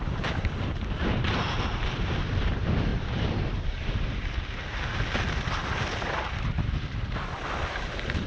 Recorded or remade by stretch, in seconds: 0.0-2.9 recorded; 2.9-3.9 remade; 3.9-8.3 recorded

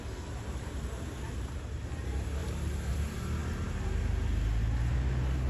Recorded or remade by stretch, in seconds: 0.0-5.5 recorded

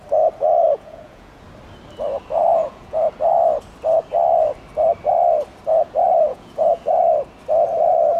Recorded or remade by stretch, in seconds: 0.0-0.6 recorded; 0.6-1.4 remade; 1.4-2.6 recorded; 2.6-3.2 remade; 3.2-6.3 recorded; 6.3-7.1 remade; 7.1-8.2 recorded